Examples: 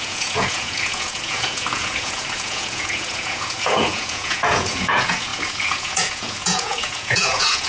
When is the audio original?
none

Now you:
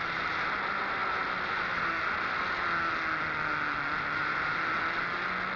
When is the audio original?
0.0-5.6

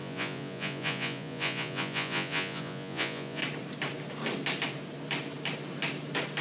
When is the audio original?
3.4-6.4

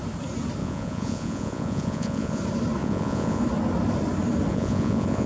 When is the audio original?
0.0-0.6; 2.4-2.8; 3.4-4.5

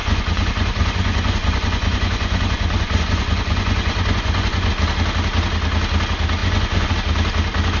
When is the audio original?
4.7-6.4; 6.9-7.8

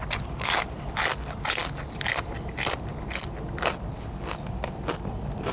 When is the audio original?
0.0-5.5